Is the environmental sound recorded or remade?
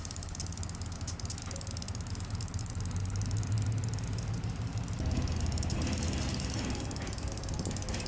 recorded